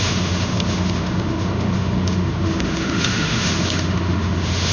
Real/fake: fake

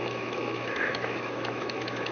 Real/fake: fake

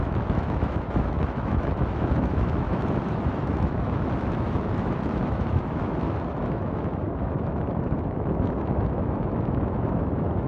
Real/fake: fake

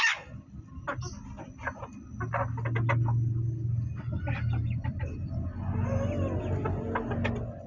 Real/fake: real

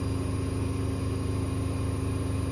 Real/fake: real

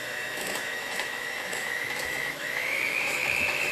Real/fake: fake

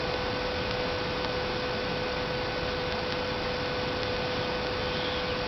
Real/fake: real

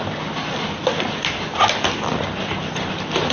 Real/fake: real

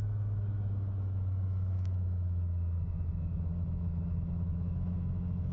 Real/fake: fake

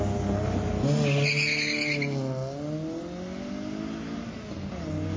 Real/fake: real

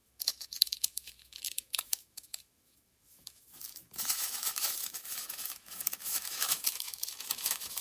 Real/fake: fake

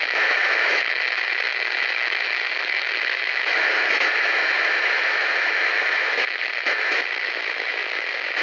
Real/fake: fake